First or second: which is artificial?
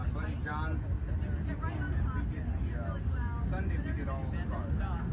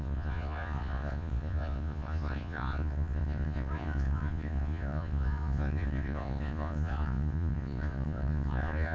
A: second